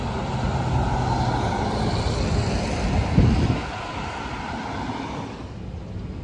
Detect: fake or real real